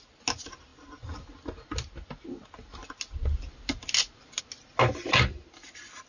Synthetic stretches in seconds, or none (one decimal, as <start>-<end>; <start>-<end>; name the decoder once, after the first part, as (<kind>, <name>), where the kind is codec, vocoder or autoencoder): none